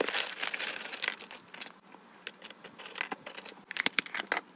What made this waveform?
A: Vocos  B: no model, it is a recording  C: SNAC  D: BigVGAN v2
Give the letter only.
B